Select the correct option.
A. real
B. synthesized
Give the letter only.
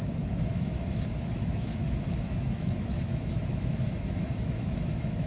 B